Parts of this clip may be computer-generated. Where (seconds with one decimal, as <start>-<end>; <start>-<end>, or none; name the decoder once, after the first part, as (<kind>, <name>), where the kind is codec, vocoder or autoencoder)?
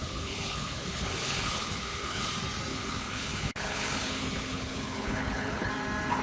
0.0-2.3 (codec, HILCodec); 2.7-5.7